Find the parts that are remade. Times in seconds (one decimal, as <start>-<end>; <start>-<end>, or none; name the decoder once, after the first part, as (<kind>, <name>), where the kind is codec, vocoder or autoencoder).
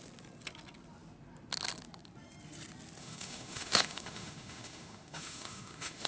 3.0-6.1 (autoencoder, DAC-VAE)